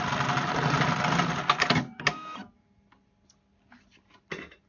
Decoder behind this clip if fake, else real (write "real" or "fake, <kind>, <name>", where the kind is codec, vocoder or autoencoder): real